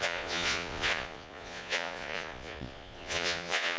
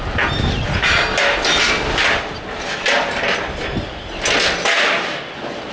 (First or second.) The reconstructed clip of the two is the first